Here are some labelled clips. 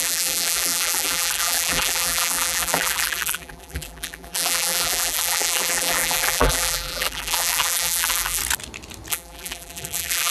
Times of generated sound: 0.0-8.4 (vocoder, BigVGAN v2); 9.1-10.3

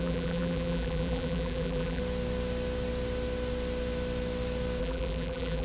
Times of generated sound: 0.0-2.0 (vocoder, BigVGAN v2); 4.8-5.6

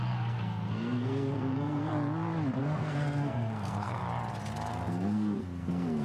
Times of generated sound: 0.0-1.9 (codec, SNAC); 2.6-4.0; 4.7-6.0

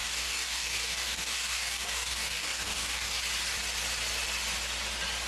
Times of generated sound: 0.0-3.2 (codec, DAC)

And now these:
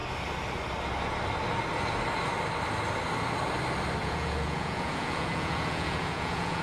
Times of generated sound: 4.0-6.6 (vocoder, Vocos)

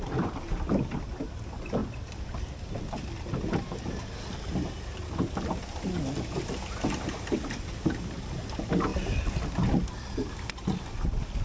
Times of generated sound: none